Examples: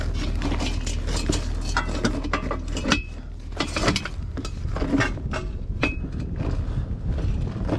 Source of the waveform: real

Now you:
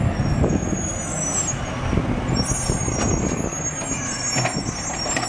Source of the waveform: real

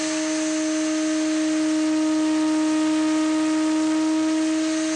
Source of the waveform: real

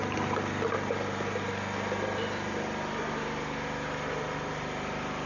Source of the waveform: real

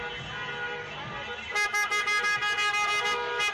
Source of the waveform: real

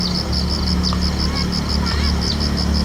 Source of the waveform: real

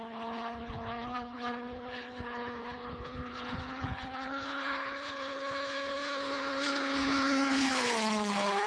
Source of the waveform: fake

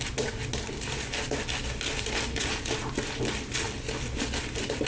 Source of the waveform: real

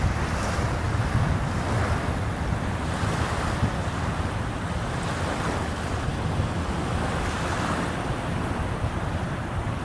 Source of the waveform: real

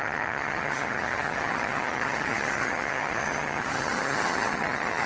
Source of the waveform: fake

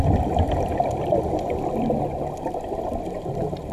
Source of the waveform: real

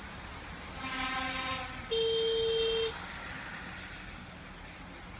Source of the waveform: real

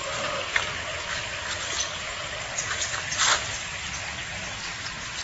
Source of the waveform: real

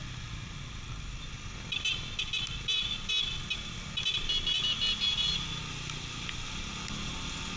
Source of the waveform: real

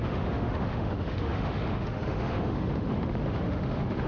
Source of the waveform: fake